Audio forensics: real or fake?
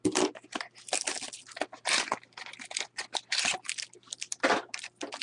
real